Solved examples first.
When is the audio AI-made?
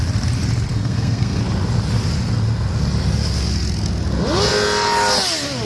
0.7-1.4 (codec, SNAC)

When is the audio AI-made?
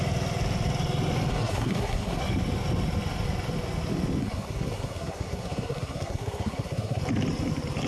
1.3-2.2 (codec, SNAC); 4.2-7.0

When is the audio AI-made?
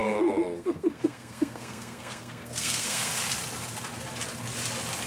0.0-3.1 (codec, SNAC)